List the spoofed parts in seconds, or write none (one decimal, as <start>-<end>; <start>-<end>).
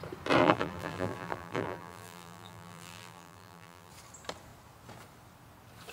0.4-3.9